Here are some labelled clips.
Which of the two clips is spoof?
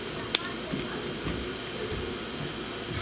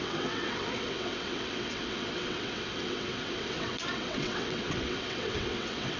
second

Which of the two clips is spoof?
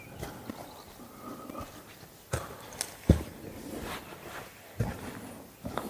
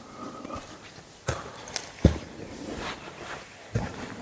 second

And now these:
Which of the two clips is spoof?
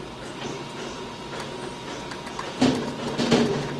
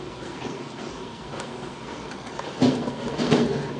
second